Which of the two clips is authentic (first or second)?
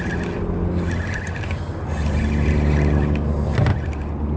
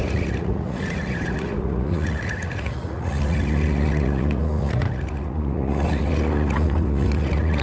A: first